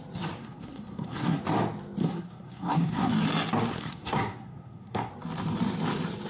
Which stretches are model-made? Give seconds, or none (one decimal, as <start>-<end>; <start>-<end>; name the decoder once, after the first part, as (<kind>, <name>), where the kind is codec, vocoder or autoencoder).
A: 0.4-1.4 (codec, SNAC); 2.0-3.1; 3.7-5.1